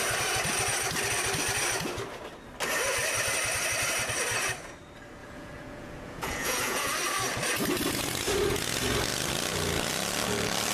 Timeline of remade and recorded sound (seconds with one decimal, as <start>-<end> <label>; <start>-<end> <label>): 0.0-5.2 recorded; 5.2-6.9 remade; 6.9-10.7 recorded